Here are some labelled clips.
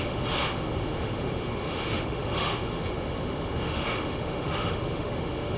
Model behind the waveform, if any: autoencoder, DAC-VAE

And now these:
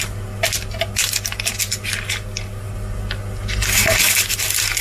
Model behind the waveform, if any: none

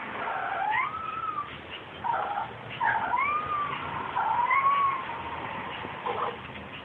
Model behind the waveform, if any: none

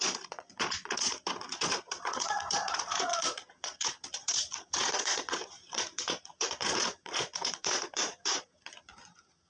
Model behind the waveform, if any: vocoder, Vocos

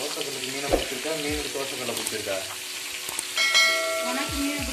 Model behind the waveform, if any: none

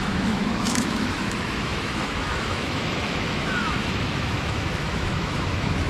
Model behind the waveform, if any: autoencoder, DAC-VAE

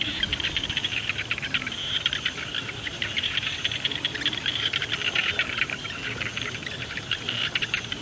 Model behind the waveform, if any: none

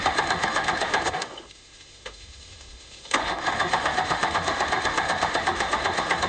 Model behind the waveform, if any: autoencoder, DAC-VAE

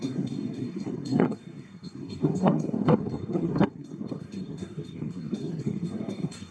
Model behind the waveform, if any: codec, SNAC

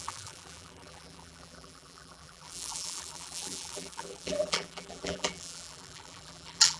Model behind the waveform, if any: vocoder, BigVGAN v2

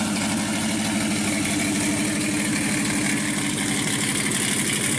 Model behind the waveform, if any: none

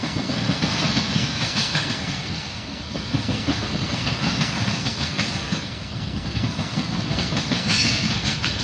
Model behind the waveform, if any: codec, SNAC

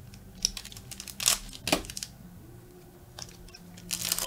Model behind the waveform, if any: none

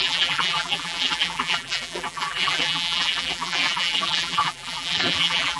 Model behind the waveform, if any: vocoder, BigVGAN v2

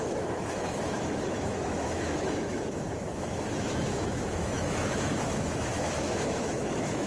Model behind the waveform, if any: autoencoder, DAC-VAE